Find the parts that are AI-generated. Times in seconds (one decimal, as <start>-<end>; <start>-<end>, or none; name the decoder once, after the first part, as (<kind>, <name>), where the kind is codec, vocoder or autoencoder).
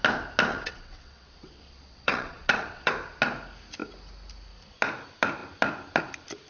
0.5-2.9 (vocoder, WaveNeXt)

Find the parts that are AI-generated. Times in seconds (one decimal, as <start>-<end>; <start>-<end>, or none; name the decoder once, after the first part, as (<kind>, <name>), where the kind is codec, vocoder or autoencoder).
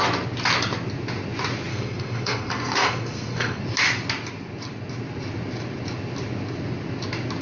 1.7-3.6 (codec, SNAC)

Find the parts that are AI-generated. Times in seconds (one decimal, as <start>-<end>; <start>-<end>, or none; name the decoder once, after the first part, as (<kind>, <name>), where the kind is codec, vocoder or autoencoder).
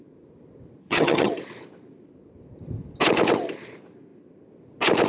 0.8-1.3 (vocoder, HiFi-GAN)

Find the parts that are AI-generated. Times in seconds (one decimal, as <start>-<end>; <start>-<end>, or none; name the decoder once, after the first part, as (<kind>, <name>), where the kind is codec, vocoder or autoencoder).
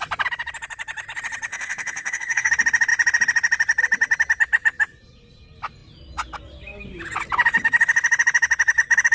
1.5-2.5 (codec, SNAC)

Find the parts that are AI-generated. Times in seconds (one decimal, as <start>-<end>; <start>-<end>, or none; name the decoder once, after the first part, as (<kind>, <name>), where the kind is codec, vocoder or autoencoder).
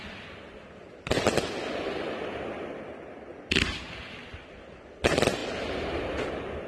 none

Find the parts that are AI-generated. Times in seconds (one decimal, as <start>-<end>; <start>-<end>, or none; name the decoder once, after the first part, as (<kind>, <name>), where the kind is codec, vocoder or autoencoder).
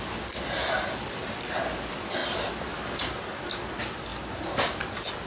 none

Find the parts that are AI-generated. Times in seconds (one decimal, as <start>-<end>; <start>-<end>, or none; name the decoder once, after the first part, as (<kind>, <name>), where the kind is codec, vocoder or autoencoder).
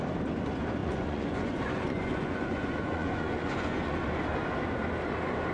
0.8-4.0 (vocoder, Vocos)